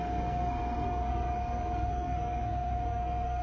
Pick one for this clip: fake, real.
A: fake